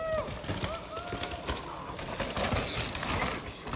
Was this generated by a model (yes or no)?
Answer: no